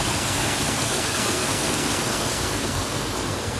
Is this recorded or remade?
remade